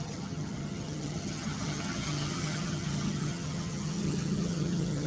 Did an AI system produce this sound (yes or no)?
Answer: yes